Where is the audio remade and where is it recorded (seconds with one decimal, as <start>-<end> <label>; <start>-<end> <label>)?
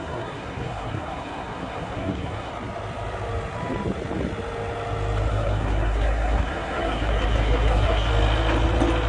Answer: 0.0-2.5 remade; 2.5-5.3 recorded; 5.3-8.1 remade; 8.1-9.1 recorded